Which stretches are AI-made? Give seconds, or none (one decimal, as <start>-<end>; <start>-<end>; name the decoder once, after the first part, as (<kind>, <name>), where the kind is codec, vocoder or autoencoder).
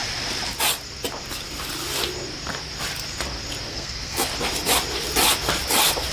3.7-4.3 (codec, SNAC)